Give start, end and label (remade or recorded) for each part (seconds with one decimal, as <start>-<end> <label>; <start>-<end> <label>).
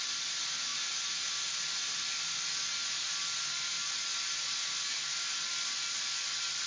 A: 0.0-6.7 recorded